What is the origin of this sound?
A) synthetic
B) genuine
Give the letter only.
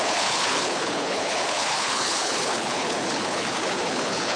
A